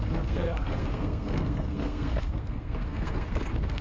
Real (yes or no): no